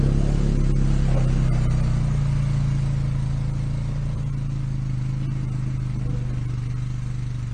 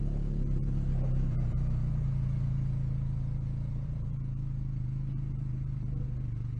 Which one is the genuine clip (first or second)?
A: first